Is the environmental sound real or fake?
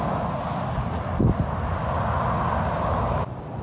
real